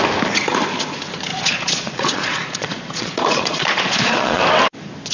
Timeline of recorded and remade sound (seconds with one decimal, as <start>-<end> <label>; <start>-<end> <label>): 0.0-1.3 recorded; 1.3-4.4 remade; 4.4-5.1 recorded